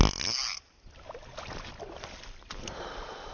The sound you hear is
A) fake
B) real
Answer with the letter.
B